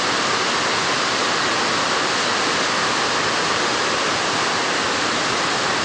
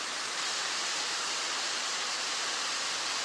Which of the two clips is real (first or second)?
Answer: first